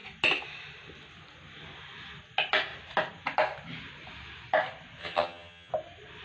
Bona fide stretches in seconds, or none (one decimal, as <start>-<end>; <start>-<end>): 0.0-5.0; 5.7-6.2